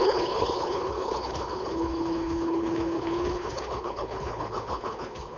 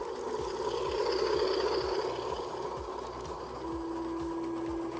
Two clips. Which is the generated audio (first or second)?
first